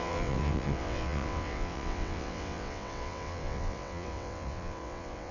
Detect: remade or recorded remade